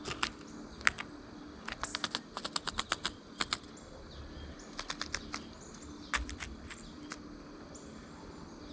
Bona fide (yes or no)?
yes